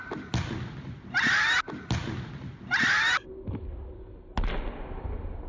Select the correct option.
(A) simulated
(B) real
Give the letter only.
B